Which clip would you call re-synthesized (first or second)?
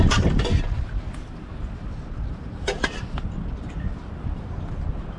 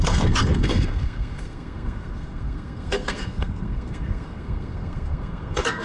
second